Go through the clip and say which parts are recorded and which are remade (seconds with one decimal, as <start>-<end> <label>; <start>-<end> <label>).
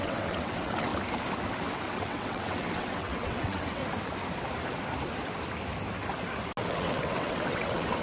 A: 0.0-0.9 remade; 0.9-1.9 recorded; 1.9-3.8 remade; 3.8-6.7 recorded; 6.7-8.0 remade